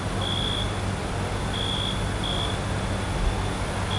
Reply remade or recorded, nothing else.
recorded